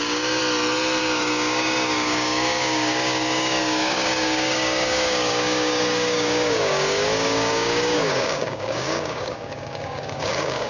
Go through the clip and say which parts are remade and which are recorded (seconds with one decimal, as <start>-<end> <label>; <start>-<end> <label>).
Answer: 0.0-0.4 remade; 0.4-1.0 recorded; 1.0-10.7 remade